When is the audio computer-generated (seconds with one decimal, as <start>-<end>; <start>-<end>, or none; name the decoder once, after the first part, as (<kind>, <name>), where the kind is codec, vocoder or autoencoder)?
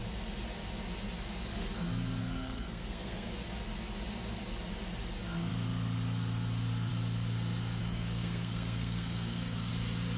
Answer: 2.2-3.3 (codec, SNAC); 7.8-9.7